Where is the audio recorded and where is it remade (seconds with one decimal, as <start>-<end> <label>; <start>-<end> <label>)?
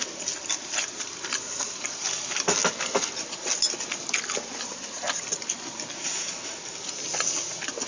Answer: 0.0-7.9 recorded